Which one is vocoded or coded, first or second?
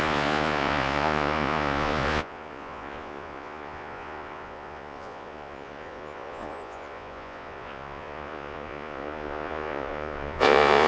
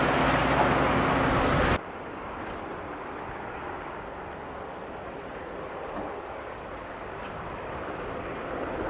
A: first